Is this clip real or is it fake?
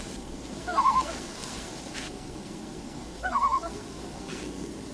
fake